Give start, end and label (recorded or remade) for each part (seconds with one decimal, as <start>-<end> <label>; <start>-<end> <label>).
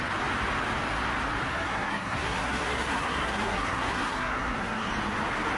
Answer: 0.0-1.5 recorded; 1.5-4.9 remade; 4.9-5.6 recorded